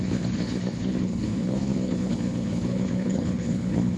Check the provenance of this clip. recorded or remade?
remade